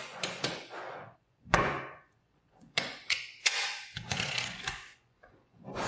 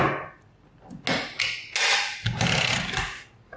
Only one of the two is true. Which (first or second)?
second